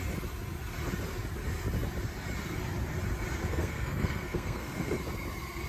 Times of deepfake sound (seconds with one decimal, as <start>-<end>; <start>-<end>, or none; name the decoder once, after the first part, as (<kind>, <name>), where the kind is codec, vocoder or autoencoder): 3.5-5.0 (codec, SNAC)